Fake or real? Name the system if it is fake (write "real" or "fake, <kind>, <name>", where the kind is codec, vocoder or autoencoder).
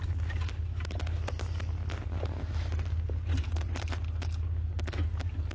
real